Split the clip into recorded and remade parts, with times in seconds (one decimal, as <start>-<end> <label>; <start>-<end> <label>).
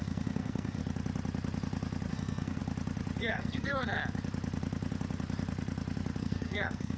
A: 0.0-0.8 remade; 0.8-2.1 recorded; 2.1-2.6 remade; 2.6-3.2 recorded; 3.2-4.0 remade; 4.0-6.2 recorded; 6.2-7.0 remade